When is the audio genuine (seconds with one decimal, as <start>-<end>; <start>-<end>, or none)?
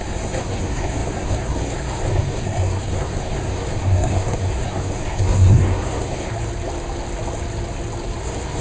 6.3-8.2